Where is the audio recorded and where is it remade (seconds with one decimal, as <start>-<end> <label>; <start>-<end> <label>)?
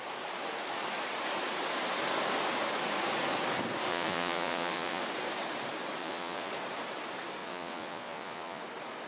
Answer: 0.0-3.9 recorded; 3.9-5.0 remade; 5.0-6.0 recorded; 6.0-6.5 remade; 6.5-7.4 recorded; 7.4-8.6 remade; 8.6-9.1 recorded